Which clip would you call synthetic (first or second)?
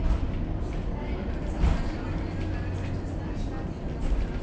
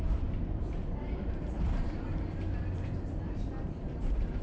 second